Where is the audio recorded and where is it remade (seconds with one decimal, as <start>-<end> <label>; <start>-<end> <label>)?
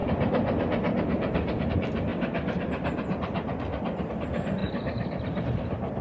0.0-2.1 remade; 2.1-4.1 recorded; 4.1-6.0 remade